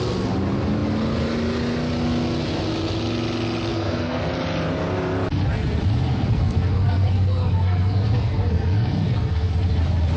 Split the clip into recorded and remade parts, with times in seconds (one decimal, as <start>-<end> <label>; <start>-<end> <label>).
0.0-3.7 recorded; 3.7-4.2 remade; 4.2-6.1 recorded; 6.1-9.5 remade; 9.5-10.2 recorded